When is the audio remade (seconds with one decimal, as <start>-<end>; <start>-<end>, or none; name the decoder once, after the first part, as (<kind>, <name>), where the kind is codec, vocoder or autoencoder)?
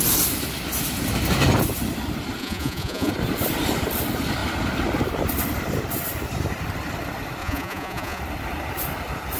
2.4-3.1 (vocoder, Vocos); 7.4-8.2